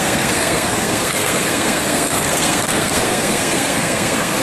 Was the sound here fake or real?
fake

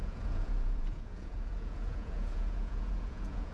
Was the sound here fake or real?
fake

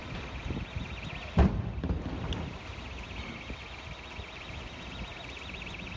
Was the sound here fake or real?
real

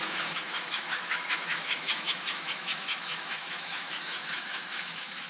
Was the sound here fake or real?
fake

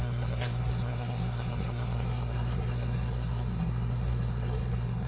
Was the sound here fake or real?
fake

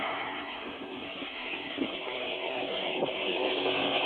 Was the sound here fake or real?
fake